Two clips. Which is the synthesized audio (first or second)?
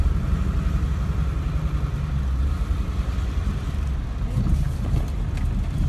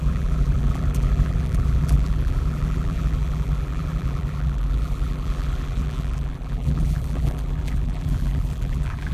second